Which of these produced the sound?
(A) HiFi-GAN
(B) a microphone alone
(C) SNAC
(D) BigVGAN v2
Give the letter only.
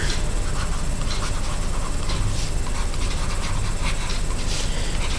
B